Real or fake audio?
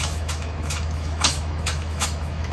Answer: fake